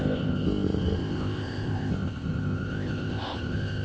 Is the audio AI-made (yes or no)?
yes